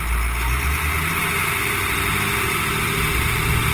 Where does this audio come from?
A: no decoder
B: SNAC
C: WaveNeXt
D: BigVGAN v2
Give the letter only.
A